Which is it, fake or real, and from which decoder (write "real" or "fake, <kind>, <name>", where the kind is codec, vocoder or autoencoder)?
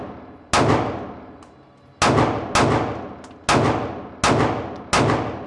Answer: real